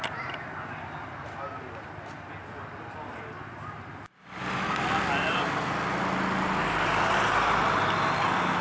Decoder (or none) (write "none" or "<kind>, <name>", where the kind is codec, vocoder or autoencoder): none